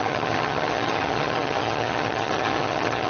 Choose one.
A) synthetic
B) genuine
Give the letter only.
A